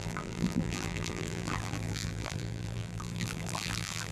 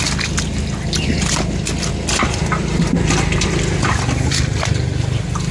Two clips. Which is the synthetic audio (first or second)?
first